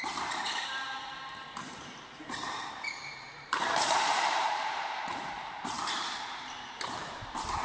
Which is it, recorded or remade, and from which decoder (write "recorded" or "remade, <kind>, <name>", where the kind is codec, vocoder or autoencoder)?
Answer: remade, vocoder, BigVGAN v2